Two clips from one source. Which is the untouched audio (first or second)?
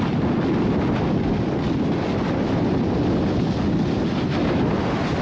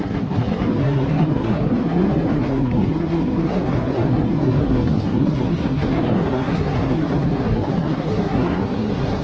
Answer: first